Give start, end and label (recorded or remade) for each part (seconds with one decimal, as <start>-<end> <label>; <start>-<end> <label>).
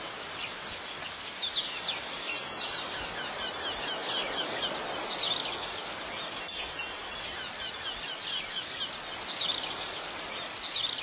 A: 0.0-11.0 recorded